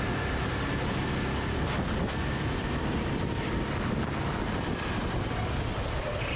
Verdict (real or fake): real